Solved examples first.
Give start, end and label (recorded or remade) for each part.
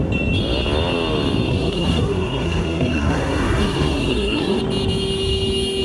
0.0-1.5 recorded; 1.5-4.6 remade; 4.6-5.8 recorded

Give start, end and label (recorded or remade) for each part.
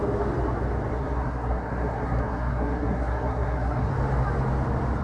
0.0-0.9 recorded; 0.9-3.9 remade; 3.9-5.0 recorded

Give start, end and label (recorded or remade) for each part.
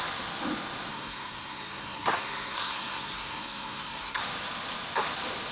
0.0-0.9 recorded; 0.9-4.2 remade; 4.2-5.5 recorded